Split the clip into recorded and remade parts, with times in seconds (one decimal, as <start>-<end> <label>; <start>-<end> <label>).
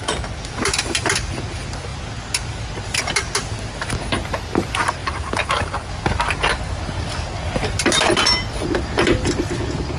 0.0-5.0 recorded; 5.0-6.0 remade; 6.0-10.0 recorded